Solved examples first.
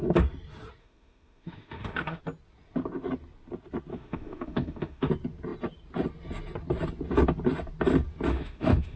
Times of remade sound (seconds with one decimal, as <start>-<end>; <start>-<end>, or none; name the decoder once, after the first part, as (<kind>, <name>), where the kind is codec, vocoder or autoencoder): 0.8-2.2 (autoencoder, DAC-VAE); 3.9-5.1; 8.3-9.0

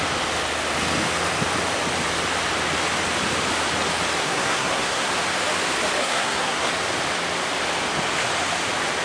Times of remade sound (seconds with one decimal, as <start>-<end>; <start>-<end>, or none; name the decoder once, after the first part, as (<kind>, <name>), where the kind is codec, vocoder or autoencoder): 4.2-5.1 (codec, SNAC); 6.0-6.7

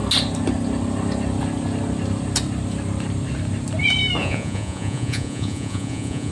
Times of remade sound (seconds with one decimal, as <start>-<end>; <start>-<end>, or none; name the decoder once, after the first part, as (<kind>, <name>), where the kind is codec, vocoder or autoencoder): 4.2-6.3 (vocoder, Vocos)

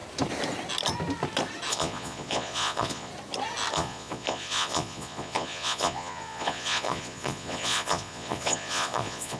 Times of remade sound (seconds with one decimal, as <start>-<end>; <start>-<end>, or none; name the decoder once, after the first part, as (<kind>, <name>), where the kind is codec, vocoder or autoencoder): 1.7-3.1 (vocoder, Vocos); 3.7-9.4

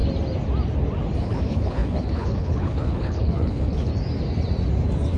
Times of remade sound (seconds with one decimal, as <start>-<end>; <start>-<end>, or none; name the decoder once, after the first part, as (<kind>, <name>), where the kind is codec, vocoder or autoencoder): 1.2-3.9 (codec, HILCodec)

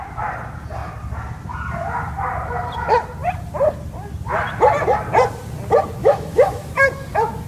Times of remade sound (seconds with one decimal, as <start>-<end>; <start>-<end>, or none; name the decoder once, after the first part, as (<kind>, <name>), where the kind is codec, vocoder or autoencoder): 6.0-6.7 (autoencoder, DAC-VAE)

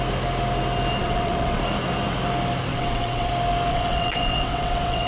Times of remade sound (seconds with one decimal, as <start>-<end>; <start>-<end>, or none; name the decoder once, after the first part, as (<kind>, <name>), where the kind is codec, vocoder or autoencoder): 1.0-1.6 (vocoder, WaveNeXt); 2.7-3.3; 3.7-5.1

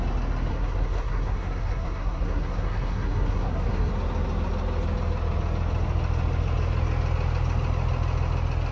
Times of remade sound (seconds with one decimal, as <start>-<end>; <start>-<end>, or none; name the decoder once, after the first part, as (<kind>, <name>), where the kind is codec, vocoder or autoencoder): 0.5-3.9 (codec, SNAC)